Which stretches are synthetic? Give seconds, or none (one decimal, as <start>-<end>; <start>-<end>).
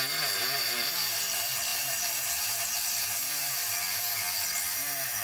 1.7-3.7